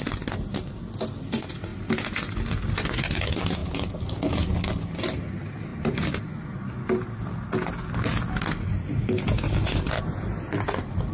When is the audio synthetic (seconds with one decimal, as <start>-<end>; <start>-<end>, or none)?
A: none